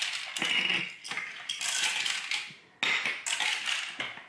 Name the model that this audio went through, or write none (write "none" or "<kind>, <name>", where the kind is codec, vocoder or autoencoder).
none